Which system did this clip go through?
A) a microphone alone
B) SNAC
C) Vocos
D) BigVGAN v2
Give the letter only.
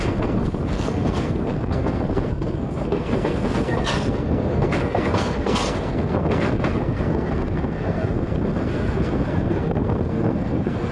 B